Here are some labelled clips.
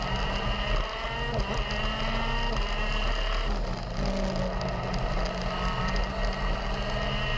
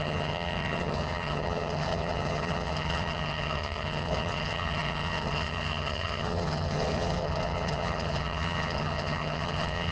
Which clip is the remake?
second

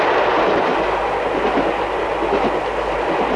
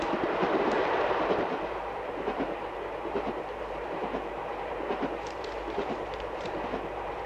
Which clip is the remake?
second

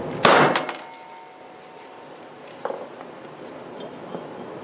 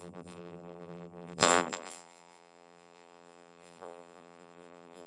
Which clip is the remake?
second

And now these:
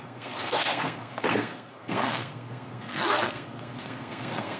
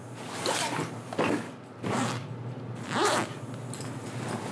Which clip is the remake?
first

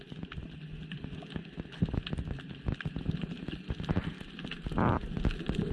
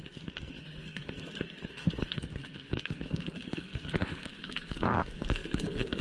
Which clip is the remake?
second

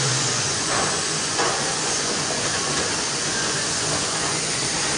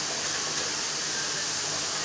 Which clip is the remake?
first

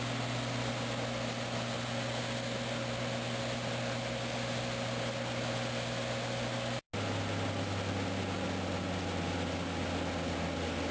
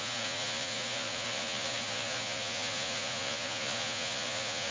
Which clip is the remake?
second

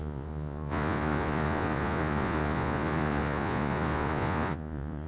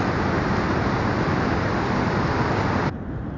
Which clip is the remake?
first